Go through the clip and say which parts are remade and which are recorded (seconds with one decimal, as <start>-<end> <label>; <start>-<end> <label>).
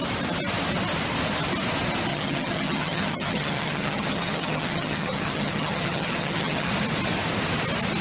0.0-2.1 recorded; 2.1-6.7 remade; 6.7-8.0 recorded